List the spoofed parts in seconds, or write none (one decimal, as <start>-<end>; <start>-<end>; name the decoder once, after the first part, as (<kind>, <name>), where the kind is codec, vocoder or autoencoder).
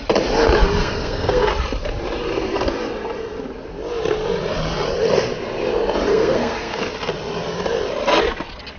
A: 0.8-1.5 (codec, SNAC); 6.1-6.8